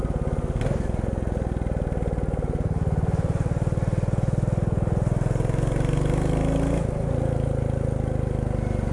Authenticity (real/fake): real